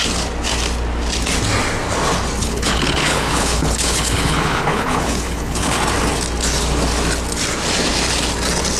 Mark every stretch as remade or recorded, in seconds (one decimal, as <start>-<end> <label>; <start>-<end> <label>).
0.0-2.4 recorded; 2.4-5.8 remade; 5.8-8.8 recorded